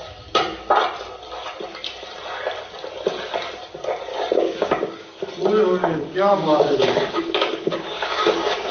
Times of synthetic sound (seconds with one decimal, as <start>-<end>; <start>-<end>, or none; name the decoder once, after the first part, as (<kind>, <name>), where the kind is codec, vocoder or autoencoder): 4.1-5.2 (codec, DAC); 5.8-8.7